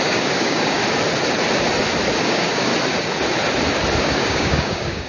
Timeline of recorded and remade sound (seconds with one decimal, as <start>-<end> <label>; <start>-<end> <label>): 0.0-0.8 remade; 0.8-2.2 recorded; 2.2-2.7 remade; 2.7-4.0 recorded; 4.0-5.1 remade